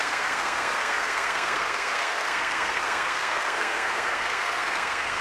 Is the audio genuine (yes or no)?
no